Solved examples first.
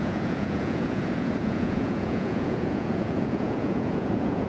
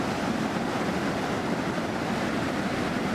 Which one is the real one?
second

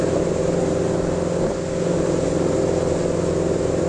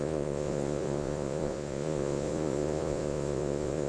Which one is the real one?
first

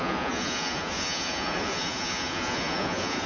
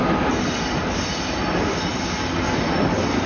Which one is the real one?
second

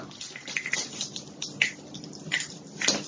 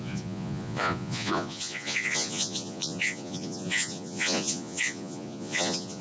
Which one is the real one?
first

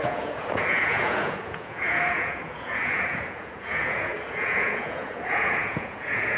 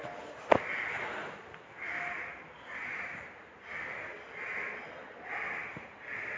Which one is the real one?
second